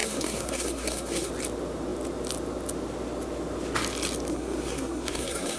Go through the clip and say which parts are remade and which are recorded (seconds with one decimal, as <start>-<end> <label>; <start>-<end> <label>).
0.0-1.3 remade; 1.3-4.3 recorded; 4.3-5.6 remade